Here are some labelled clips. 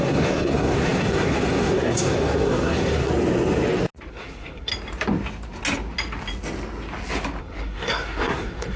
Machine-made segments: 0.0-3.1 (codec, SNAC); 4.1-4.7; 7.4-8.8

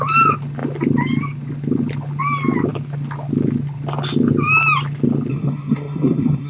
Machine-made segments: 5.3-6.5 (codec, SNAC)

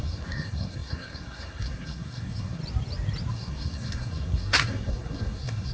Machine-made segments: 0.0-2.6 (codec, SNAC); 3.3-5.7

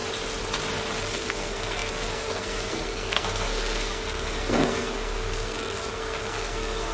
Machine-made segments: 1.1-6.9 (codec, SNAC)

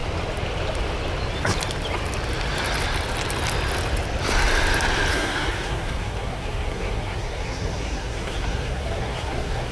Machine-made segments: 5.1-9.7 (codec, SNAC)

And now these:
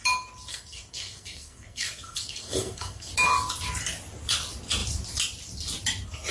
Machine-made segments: 0.5-3.1 (codec, SNAC)

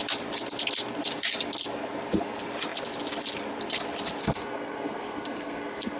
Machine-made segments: 4.2-6.0 (codec, SNAC)